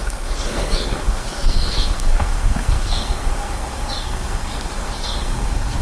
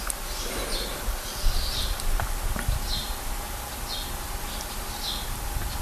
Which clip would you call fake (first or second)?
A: first